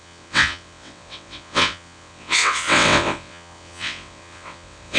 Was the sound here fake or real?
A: fake